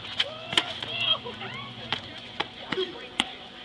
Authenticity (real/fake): fake